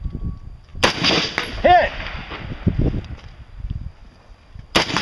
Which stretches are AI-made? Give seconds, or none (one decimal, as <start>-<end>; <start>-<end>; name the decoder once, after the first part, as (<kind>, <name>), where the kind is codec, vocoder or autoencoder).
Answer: none